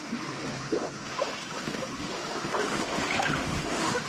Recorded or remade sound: remade